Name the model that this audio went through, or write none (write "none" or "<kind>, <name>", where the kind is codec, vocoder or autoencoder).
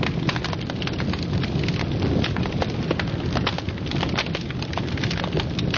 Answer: none